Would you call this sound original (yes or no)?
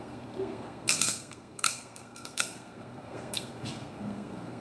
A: no